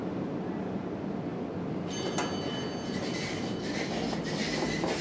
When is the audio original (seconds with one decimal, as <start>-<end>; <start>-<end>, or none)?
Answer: 0.0-5.0